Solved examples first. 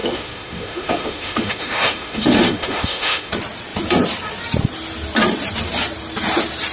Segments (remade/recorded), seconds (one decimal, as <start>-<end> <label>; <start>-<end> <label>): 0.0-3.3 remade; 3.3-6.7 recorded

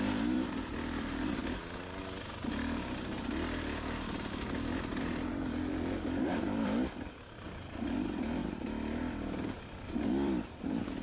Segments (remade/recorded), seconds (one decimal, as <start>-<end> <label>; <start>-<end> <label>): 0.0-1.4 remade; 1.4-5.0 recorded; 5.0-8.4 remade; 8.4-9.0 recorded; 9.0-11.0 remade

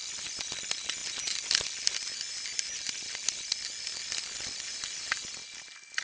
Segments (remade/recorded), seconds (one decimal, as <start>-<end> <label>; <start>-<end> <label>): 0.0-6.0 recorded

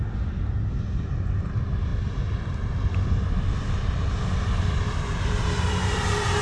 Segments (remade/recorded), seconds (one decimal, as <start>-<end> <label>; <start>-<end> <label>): 0.0-1.9 remade; 1.9-4.8 recorded; 4.8-6.4 remade

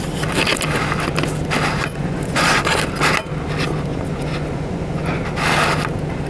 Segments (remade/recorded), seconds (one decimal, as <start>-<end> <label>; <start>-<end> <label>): 0.0-1.8 recorded; 1.8-2.6 remade; 2.6-3.9 recorded; 3.9-5.2 remade; 5.2-6.3 recorded